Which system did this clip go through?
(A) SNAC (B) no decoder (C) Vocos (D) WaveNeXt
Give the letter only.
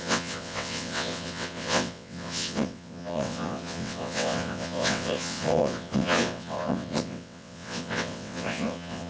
D